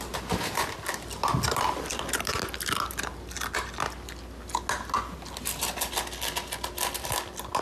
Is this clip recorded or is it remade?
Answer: recorded